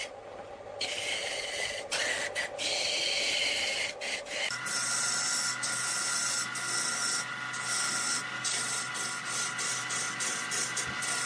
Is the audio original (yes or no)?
yes